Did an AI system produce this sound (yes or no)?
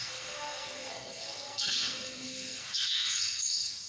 yes